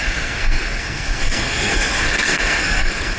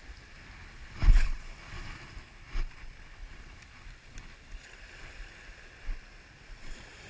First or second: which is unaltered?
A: second